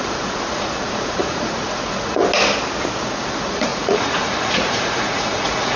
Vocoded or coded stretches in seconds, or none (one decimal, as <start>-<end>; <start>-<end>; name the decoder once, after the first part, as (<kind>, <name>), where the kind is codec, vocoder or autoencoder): 0.0-2.2 (vocoder, Vocos); 3.1-5.8